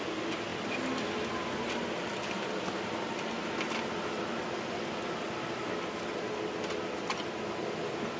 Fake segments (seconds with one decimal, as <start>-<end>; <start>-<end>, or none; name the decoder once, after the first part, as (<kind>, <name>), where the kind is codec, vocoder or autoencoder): none

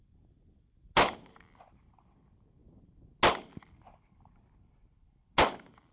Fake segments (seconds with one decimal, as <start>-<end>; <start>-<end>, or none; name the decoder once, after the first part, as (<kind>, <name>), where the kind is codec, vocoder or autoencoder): none

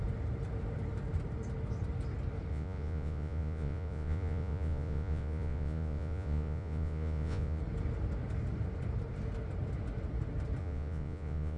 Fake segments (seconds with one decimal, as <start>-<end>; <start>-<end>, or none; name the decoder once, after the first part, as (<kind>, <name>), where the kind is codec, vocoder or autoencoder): 2.5-7.6 (vocoder, Vocos); 10.6-11.6

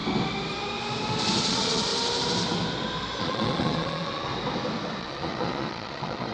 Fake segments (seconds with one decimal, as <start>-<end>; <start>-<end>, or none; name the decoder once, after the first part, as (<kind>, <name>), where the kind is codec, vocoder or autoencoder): 1.4-1.9 (vocoder, Vocos); 3.2-4.3; 5.0-6.3

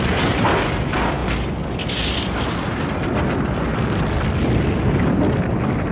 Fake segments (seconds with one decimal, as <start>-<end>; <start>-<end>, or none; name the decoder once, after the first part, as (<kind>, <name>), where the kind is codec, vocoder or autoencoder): none

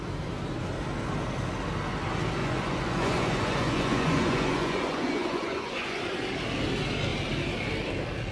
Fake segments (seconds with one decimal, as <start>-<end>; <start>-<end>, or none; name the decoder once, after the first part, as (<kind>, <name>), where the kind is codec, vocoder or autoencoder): 2.4-6.0 (vocoder, Vocos)

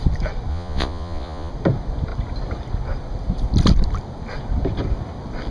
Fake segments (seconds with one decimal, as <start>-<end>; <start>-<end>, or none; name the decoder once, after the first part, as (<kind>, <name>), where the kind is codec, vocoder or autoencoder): 0.5-1.5 (vocoder, Vocos)